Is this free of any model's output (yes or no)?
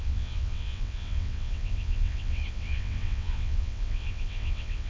no